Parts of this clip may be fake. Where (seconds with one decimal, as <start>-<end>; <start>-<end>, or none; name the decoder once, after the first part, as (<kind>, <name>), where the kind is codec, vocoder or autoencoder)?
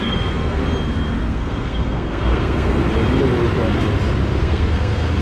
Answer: 0.0-0.6 (codec, SNAC); 1.2-2.8; 4.4-5.2